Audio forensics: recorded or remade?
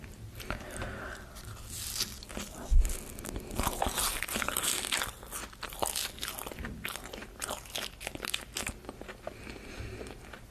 recorded